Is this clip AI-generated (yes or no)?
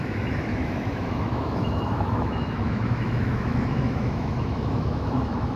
yes